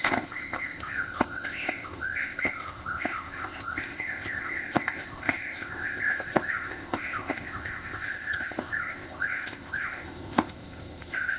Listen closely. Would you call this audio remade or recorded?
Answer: remade